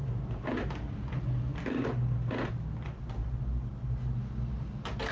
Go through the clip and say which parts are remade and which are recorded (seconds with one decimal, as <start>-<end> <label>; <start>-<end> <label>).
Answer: 0.0-1.1 remade; 1.1-5.1 recorded